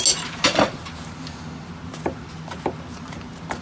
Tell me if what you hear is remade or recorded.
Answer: recorded